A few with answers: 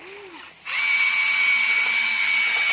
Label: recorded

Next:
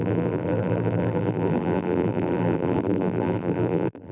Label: remade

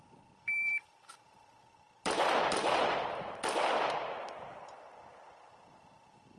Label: remade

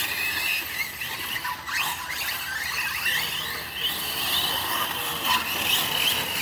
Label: recorded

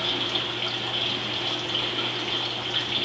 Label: recorded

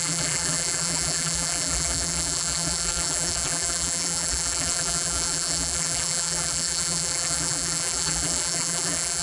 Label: remade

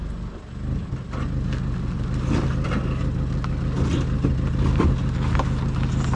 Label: recorded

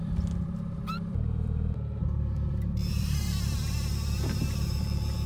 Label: remade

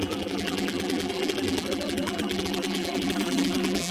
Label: remade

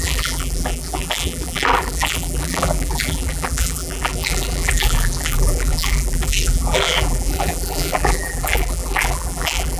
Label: remade